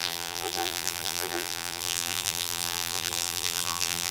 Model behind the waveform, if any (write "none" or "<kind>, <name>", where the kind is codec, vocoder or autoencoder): vocoder, BigVGAN v2